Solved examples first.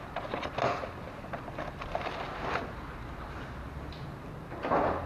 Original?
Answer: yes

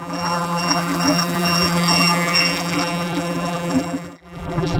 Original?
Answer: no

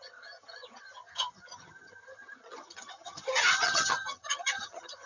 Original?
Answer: no